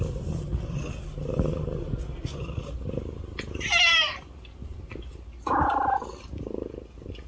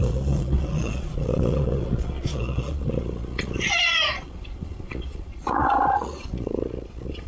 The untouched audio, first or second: first